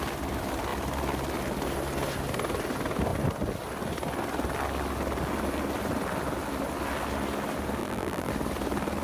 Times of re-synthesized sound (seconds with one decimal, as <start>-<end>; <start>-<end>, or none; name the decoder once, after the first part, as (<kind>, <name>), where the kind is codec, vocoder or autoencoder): 7.8-8.3 (vocoder, BigVGAN v2)